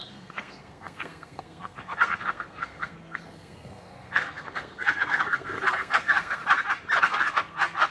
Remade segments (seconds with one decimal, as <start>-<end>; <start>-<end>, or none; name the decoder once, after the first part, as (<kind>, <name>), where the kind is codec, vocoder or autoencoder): 0.0-6.4 (codec, SNAC); 7.0-7.9

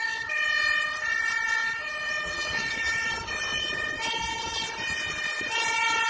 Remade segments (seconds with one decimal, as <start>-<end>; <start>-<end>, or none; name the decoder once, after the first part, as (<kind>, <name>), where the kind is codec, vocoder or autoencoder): 1.6-3.1 (vocoder, WaveNeXt)